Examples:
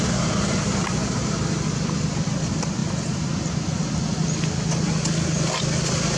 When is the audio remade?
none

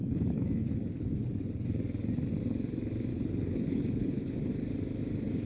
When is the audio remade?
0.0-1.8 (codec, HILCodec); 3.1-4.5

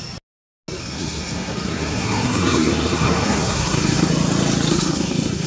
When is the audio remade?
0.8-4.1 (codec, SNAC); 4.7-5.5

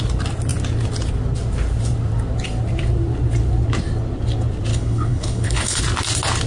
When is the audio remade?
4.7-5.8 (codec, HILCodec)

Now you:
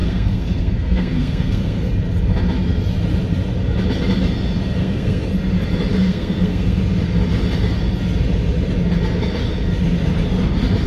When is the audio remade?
0.0-1.9 (codec, SNAC); 4.8-5.3; 5.9-6.8